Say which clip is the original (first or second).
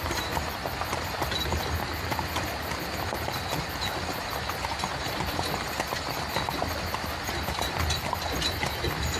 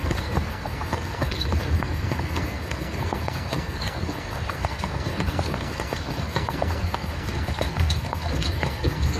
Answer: first